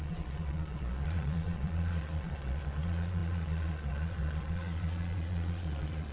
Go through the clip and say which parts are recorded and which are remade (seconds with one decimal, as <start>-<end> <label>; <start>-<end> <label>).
0.0-6.1 remade